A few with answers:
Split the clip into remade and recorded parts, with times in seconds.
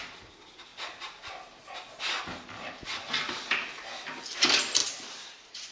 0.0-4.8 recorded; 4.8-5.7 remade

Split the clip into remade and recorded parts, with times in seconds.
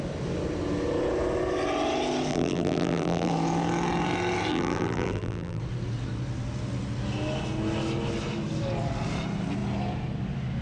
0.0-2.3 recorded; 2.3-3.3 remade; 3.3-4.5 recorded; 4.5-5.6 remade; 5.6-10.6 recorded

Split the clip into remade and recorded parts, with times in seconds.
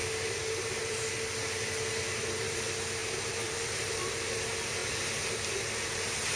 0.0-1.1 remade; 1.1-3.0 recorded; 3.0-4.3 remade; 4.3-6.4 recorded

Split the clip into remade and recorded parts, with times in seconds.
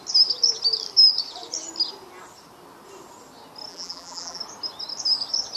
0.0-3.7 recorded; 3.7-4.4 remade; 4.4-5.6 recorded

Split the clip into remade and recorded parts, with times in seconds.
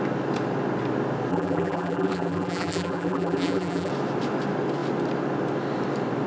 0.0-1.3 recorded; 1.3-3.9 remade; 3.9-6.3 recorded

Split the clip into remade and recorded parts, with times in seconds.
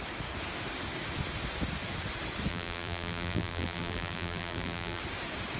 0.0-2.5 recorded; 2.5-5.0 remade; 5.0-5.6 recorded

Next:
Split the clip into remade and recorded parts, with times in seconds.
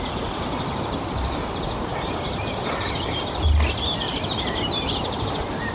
0.0-5.7 remade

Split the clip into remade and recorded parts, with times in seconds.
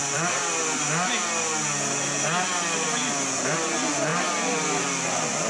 0.0-0.6 remade; 0.6-4.1 recorded; 4.1-4.8 remade; 4.8-5.5 recorded